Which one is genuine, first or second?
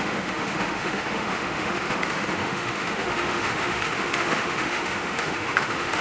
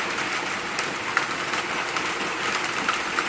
second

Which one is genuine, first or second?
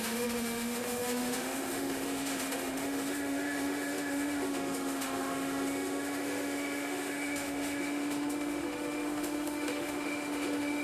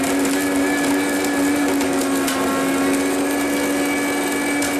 second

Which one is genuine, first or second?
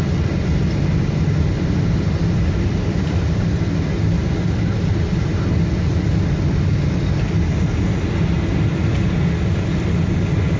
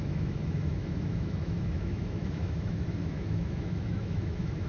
first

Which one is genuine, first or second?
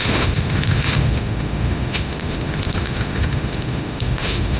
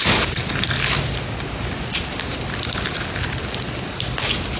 second